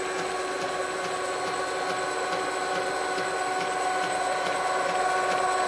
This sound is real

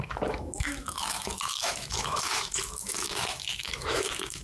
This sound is fake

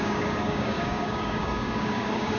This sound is fake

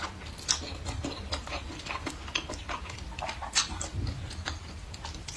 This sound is fake